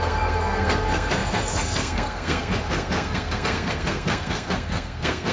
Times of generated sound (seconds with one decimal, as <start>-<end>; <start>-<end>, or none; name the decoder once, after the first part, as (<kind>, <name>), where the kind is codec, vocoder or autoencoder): 0.0-5.3 (codec, SNAC)

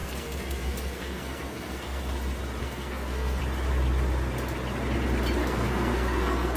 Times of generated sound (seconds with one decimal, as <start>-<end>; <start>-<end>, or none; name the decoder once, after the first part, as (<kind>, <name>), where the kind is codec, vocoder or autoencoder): 0.0-2.0 (codec, SNAC); 2.6-3.4; 5.4-6.6